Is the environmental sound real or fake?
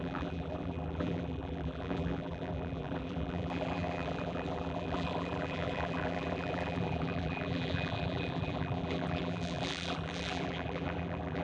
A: fake